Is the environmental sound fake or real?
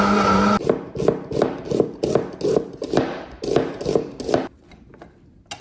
real